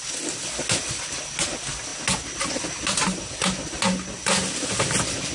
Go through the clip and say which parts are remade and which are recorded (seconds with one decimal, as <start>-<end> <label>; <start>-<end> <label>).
0.0-5.3 recorded